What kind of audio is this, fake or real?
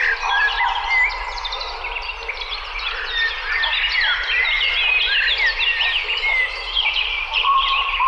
real